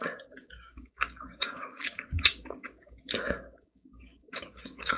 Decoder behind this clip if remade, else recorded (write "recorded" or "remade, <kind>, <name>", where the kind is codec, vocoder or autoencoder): remade, codec, DAC